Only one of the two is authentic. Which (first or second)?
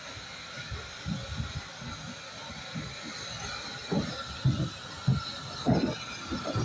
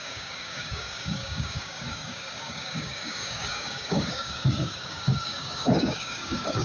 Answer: first